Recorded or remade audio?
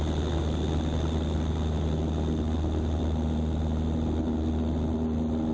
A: recorded